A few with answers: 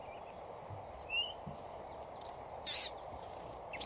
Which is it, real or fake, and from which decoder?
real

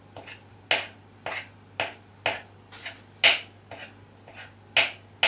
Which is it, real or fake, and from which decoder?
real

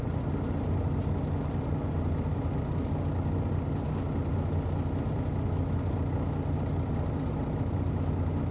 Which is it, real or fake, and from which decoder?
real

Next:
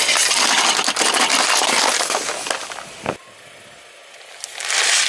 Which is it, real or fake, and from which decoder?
real